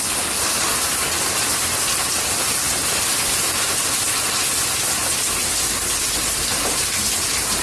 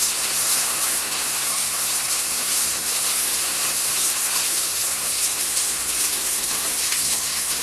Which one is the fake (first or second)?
second